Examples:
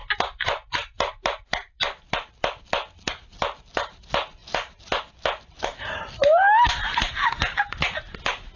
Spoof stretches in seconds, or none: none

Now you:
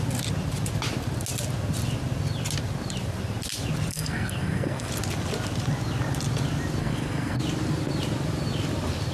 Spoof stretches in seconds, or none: 3.9-4.9 (codec, SNAC); 6.8-7.4